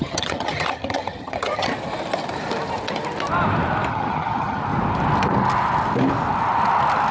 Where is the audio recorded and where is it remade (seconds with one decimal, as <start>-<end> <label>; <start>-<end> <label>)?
0.0-1.7 remade; 1.7-3.9 recorded; 3.9-4.6 remade; 4.6-7.1 recorded